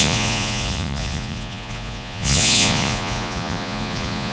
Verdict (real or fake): fake